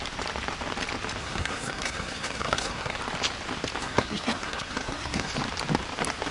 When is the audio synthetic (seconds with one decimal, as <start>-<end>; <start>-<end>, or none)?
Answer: 1.2-3.0; 3.8-5.3